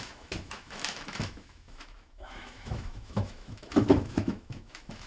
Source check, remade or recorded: remade